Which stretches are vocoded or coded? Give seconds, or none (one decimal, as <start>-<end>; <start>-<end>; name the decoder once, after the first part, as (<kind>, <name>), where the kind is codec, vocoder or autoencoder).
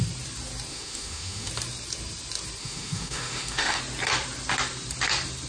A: 0.7-1.5 (autoencoder, DAC-VAE); 2.6-3.8